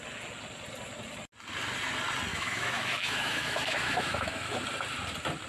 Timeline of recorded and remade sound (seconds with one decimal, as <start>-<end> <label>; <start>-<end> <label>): 0.0-2.3 recorded; 2.3-4.6 remade; 4.6-5.5 recorded